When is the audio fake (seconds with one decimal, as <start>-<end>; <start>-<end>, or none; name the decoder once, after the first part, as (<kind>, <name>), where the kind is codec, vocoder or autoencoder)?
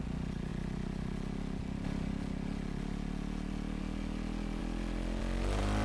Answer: none